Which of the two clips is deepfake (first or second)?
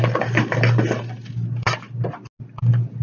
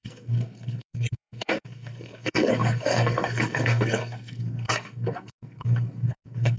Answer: second